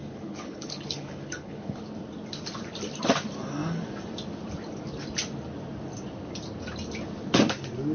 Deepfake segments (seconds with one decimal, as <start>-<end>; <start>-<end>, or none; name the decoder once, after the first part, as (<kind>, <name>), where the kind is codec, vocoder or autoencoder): 0.0-1.8 (codec, HILCodec)